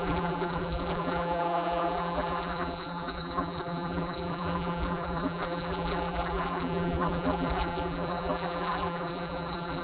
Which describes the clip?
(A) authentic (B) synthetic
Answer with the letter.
B